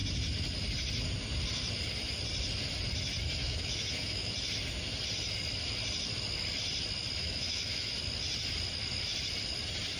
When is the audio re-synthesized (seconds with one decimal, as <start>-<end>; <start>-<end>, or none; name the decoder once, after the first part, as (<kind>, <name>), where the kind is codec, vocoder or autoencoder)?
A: 3.4-4.3 (autoencoder, DAC-VAE); 7.2-7.9